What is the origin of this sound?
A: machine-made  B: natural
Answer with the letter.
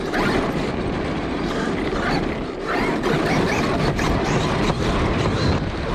A